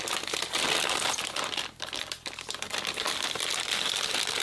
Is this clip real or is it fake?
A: real